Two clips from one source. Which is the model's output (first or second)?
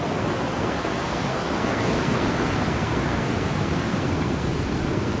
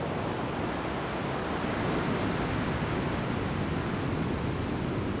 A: first